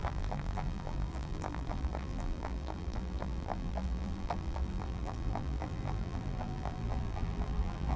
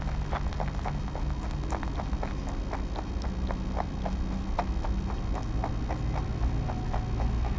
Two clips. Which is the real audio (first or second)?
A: second